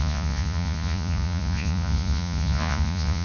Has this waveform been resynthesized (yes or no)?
yes